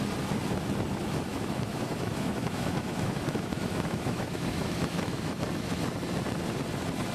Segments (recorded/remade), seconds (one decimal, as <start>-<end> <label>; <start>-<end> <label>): 0.0-1.3 recorded; 1.3-5.3 remade; 5.3-7.1 recorded